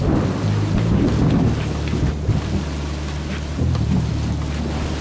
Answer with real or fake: real